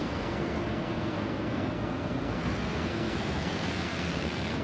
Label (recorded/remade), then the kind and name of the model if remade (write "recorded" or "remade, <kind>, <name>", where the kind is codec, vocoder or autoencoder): remade, codec, SNAC